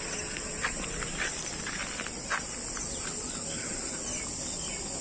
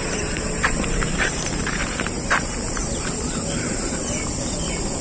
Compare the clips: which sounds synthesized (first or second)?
second